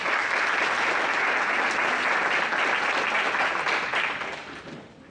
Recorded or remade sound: recorded